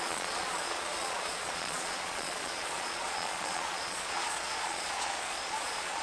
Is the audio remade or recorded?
remade